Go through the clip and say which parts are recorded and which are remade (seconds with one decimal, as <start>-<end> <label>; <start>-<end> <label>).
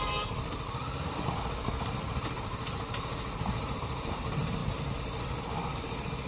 0.0-6.3 recorded